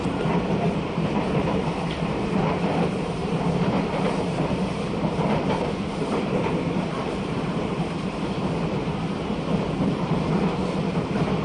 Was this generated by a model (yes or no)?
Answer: yes